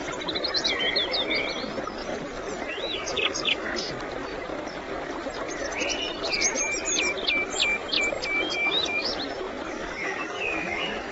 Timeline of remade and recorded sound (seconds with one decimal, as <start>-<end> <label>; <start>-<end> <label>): 0.0-2.7 recorded; 2.7-3.7 remade; 3.7-8.5 recorded; 8.5-9.1 remade; 9.1-9.7 recorded; 9.7-11.1 remade